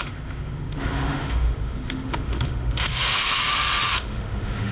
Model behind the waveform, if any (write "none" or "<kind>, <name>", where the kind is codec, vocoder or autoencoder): autoencoder, DAC-VAE